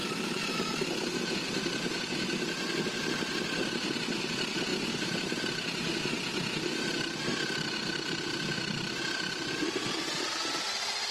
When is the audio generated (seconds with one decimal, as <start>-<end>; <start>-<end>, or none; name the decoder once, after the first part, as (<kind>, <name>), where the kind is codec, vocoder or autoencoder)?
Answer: none

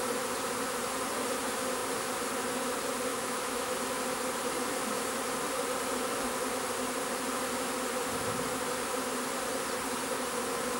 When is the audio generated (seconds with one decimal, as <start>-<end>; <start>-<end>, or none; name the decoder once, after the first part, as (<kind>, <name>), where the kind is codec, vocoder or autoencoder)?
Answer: 3.1-3.7 (autoencoder, DAC-VAE)

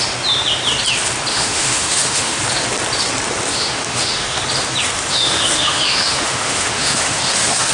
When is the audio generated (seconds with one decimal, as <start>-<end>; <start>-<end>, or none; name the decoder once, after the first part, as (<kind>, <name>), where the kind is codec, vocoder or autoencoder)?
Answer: 1.3-2.4 (autoencoder, DAC-VAE); 3.5-4.4; 5.1-7.7

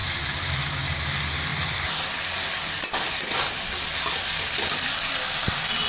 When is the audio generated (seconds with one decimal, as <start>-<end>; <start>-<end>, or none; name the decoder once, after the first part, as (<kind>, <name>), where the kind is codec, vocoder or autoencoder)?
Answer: none

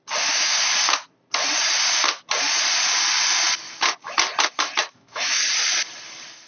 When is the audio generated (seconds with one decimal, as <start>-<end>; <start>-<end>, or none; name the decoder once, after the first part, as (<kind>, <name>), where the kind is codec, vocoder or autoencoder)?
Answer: 4.8-5.4 (autoencoder, DAC-VAE)

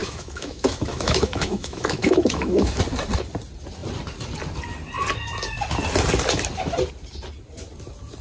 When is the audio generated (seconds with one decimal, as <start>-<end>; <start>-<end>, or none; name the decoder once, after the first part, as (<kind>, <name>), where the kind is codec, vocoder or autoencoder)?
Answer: 0.0-2.8 (autoencoder, DAC-VAE)

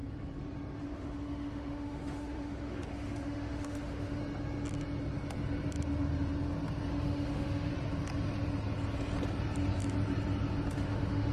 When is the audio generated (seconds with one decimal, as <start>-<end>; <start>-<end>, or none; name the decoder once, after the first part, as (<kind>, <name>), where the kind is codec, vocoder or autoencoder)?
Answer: 0.8-4.2 (autoencoder, DAC-VAE); 6.9-7.7; 10.7-11.3

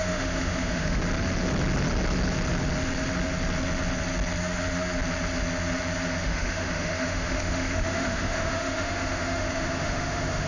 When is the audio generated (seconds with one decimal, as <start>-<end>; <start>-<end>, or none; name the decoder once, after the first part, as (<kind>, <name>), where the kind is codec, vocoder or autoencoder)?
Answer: 0.0-1.0 (autoencoder, DAC-VAE); 6.2-10.5